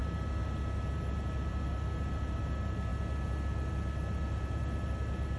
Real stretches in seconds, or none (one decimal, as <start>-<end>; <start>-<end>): 0.0-5.4

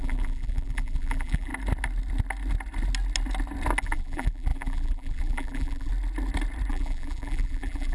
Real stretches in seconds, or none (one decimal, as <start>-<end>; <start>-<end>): 1.5-3.8; 5.9-6.7

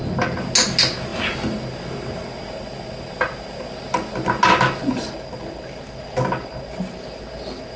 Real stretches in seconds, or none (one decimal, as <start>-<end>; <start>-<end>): 0.0-7.8

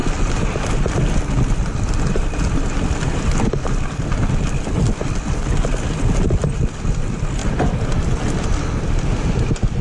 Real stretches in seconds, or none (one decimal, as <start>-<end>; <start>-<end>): 0.0-9.8

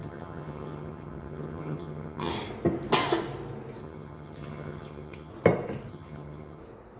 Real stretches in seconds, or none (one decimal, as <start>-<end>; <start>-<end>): 2.3-3.8; 5.3-5.9; 6.6-7.0

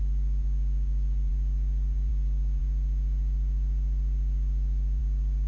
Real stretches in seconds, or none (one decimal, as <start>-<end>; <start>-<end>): 0.0-5.5

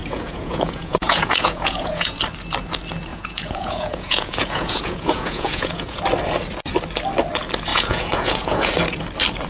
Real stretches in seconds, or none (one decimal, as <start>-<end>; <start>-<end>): 2.2-3.1; 6.0-7.7; 8.7-9.5